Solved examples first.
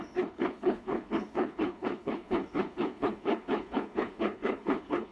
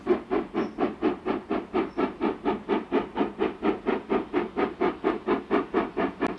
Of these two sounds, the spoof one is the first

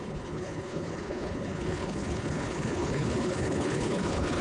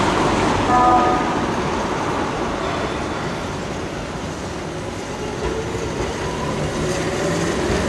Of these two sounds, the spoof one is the first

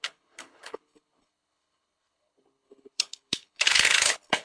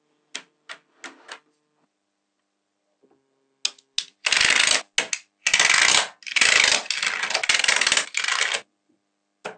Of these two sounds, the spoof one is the first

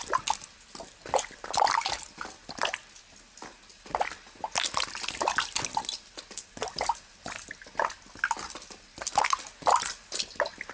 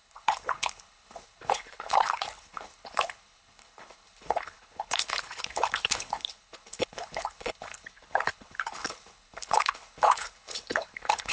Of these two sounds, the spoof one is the second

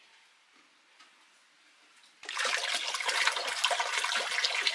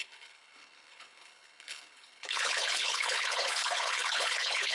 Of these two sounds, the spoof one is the second